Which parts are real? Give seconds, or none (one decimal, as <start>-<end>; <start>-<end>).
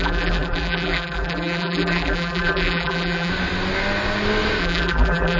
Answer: 3.3-4.6